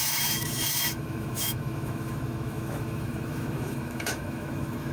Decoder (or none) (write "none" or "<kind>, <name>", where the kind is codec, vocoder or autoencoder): autoencoder, DAC-VAE